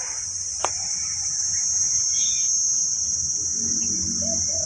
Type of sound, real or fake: real